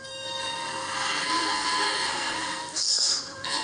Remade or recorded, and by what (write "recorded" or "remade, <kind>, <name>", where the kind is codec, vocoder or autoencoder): remade, codec, SNAC